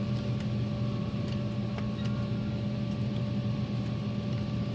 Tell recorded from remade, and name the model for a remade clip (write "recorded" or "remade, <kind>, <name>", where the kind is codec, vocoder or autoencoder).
recorded